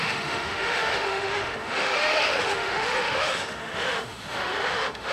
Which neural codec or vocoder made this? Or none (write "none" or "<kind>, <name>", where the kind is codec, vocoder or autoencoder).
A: autoencoder, DAC-VAE